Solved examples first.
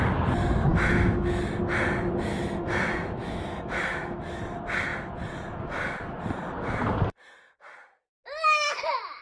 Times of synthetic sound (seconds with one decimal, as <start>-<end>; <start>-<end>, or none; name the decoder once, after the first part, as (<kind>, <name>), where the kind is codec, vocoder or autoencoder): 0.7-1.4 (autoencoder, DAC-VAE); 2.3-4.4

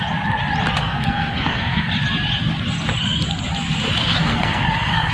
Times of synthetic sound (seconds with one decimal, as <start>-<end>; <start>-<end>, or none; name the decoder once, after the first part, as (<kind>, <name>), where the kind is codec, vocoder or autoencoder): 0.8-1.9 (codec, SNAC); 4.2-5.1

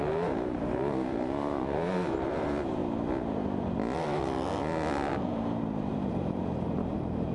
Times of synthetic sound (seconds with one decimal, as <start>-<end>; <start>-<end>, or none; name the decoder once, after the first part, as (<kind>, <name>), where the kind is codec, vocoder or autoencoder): 0.0-2.8 (vocoder, BigVGAN v2); 5.1-7.3

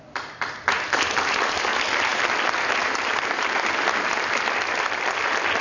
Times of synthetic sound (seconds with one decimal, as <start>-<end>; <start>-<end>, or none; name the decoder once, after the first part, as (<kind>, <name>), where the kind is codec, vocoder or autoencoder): none

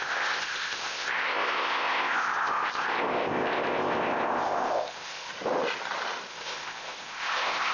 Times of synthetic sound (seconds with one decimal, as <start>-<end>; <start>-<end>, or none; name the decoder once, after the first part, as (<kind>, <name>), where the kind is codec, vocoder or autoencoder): 0.0-5.3 (codec, ZipCodec); 6.3-7.7